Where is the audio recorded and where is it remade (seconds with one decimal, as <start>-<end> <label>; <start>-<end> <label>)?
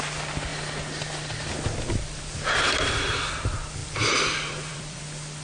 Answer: 0.0-3.8 recorded; 3.8-5.0 remade; 5.0-5.4 recorded